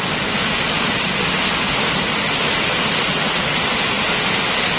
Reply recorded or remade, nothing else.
recorded